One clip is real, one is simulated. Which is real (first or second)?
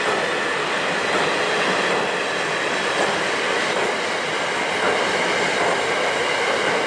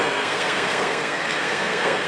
first